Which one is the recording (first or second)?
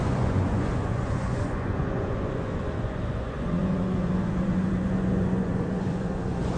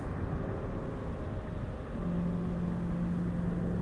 second